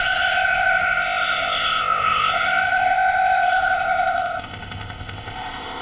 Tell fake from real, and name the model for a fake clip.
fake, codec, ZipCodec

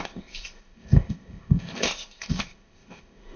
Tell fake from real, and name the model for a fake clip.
fake, codec, ZipCodec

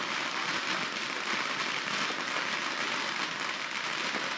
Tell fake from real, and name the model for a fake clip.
real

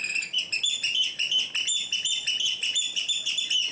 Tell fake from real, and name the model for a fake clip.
real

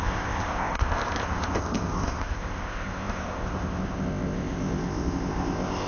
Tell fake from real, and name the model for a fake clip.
fake, codec, ZipCodec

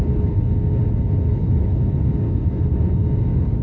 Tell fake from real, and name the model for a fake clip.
real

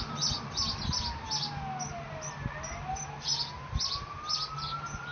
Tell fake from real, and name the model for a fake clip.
real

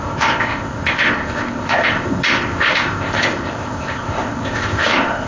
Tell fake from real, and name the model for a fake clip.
fake, codec, ZipCodec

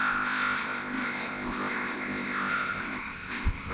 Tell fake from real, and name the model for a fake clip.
fake, codec, ZipCodec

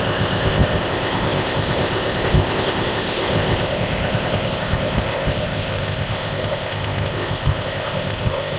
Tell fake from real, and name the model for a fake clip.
fake, codec, ZipCodec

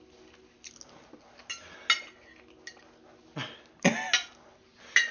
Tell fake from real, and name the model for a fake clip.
real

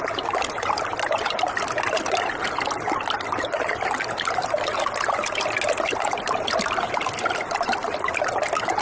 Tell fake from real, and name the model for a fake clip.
real